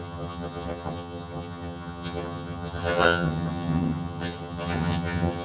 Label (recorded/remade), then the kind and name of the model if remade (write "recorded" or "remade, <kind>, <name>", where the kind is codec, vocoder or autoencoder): remade, vocoder, HiFi-GAN